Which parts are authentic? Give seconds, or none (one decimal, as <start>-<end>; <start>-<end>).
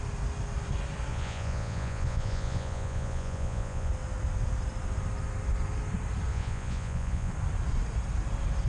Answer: 0.0-1.1; 3.9-6.3; 7.3-8.7